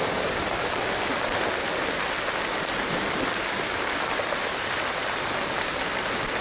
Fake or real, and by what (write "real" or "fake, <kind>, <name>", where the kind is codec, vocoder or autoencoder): real